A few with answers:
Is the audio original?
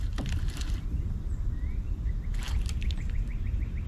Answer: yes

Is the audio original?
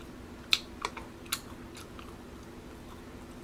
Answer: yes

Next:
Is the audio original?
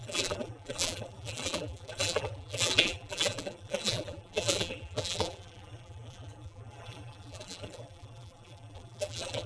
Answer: no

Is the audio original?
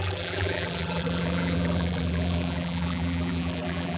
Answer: no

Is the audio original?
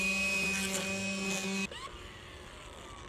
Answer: yes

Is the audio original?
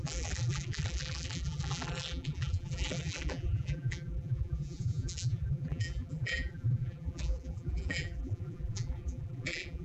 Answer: no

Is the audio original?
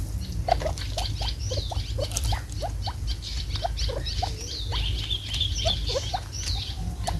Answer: yes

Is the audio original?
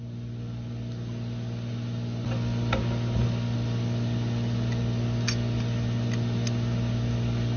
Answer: yes